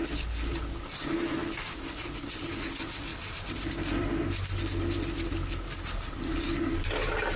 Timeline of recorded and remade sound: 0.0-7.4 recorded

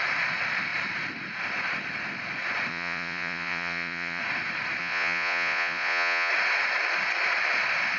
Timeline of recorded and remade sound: 0.0-2.7 recorded; 2.7-4.2 remade; 4.2-4.8 recorded; 4.8-6.3 remade; 6.3-8.0 recorded